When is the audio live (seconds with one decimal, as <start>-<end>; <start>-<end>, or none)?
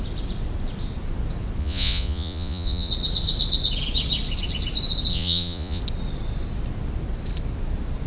0.0-1.6; 2.9-5.1; 5.8-8.1